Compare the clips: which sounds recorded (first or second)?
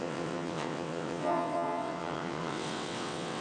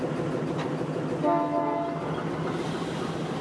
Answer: second